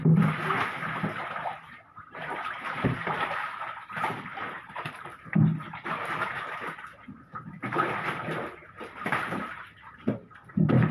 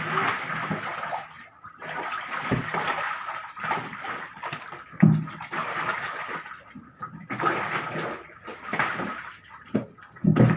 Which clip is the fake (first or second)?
first